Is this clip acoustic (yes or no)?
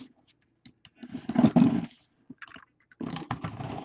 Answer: yes